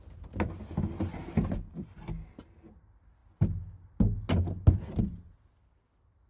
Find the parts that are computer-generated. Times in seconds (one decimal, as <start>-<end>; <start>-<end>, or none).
none